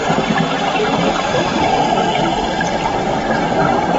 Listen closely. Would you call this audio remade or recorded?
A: recorded